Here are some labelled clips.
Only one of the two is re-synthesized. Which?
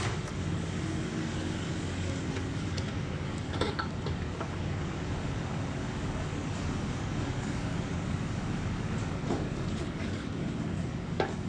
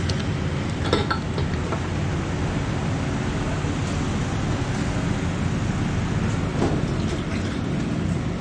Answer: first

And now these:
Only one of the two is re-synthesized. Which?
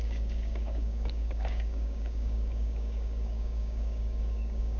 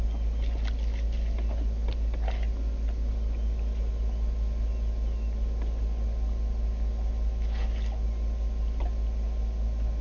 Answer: first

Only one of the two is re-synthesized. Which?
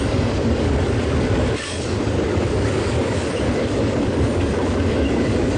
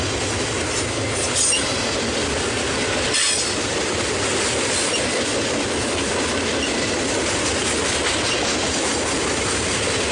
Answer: first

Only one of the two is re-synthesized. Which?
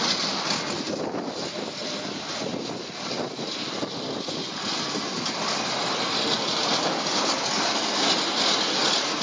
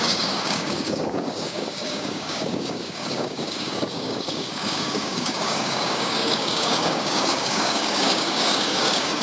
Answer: second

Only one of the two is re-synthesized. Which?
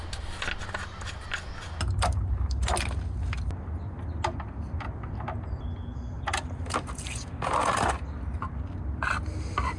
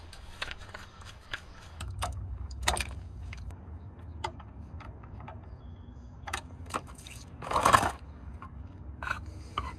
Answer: second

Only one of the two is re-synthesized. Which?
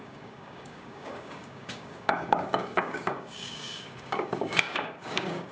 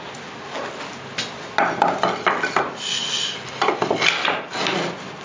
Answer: first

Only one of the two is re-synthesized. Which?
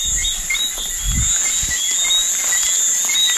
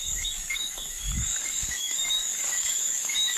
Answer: second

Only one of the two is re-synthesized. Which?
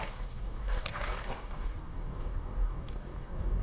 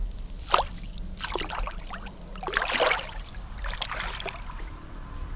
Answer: first